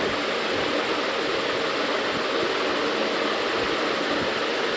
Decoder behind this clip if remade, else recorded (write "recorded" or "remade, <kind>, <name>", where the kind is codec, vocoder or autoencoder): recorded